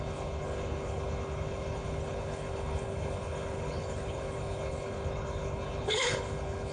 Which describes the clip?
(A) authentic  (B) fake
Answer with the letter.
B